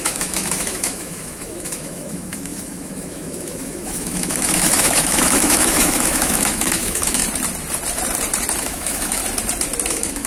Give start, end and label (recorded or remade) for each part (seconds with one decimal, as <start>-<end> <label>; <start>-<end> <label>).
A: 0.0-7.2 remade; 7.2-8.6 recorded; 8.6-9.2 remade; 9.2-9.9 recorded; 9.9-10.3 remade